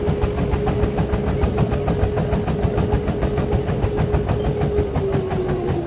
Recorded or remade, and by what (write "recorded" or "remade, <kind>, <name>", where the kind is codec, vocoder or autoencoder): recorded